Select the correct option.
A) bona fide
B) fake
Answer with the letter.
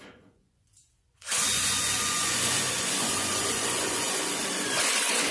B